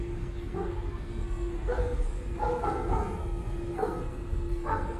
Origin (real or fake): fake